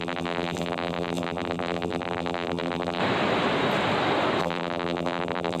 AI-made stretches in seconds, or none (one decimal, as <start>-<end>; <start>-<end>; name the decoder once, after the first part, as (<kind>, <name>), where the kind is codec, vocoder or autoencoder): 0.0-3.0 (vocoder, BigVGAN v2); 4.4-5.6